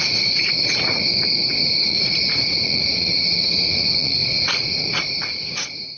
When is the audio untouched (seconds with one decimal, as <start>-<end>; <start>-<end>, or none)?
1.0-1.9